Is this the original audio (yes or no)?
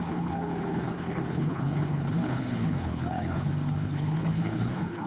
no